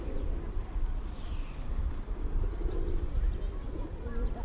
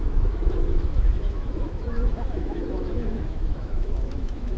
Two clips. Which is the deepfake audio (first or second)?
second